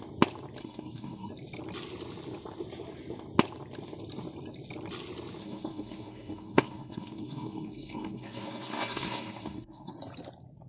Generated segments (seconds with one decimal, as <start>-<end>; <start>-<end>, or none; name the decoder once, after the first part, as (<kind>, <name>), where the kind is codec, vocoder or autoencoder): 0.6-1.3 (codec, SNAC); 5.4-9.9